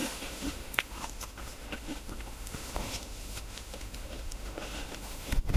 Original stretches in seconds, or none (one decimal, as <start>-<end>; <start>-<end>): none